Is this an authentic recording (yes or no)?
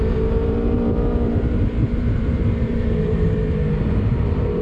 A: no